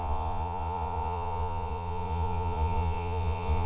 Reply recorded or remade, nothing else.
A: remade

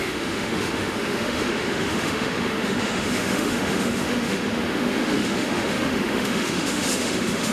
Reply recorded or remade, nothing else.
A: remade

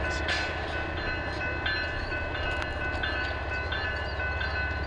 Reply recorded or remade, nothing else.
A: recorded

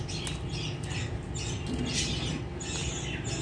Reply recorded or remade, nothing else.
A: recorded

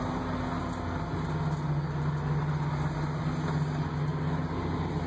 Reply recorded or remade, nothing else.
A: recorded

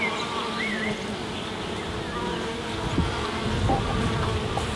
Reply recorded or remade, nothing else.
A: recorded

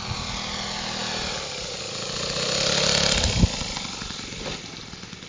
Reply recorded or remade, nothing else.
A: recorded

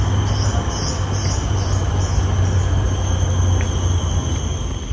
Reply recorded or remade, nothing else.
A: recorded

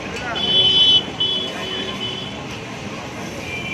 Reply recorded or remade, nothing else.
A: recorded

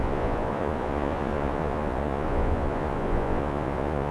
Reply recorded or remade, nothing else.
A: remade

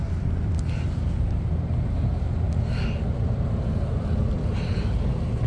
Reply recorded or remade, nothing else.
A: recorded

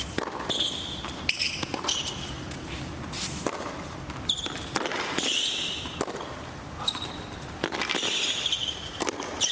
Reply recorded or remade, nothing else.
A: recorded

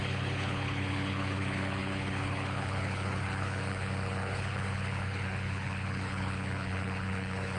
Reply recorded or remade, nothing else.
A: remade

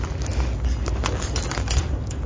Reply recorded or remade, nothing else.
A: recorded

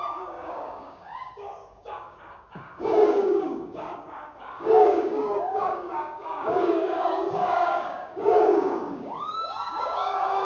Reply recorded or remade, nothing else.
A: remade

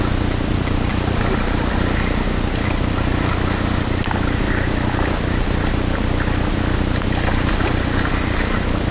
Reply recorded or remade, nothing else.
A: recorded